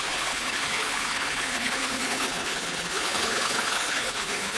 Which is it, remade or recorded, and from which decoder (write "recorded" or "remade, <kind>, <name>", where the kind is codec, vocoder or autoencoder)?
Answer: remade, codec, HILCodec